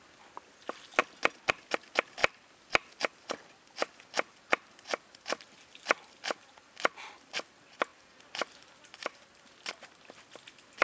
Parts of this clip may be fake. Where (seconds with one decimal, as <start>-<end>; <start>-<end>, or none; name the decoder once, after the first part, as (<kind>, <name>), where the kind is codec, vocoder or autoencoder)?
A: none